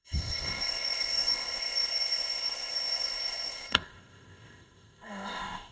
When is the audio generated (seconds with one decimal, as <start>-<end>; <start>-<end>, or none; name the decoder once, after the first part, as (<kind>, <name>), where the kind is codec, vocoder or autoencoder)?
0.0-5.7 (codec, ZipCodec)